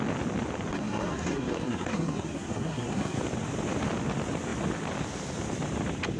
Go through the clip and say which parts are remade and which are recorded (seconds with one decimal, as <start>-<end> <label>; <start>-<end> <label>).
0.0-0.7 recorded; 0.7-3.2 remade; 3.2-6.2 recorded